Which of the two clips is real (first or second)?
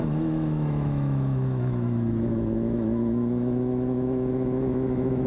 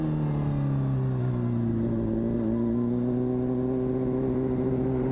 second